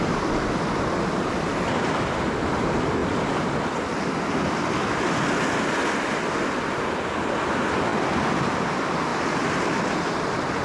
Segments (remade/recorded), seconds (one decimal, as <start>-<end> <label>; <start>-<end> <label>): 0.0-10.6 recorded